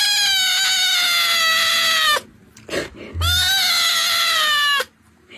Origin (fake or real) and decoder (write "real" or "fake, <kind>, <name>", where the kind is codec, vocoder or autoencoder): real